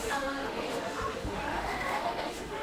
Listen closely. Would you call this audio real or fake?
fake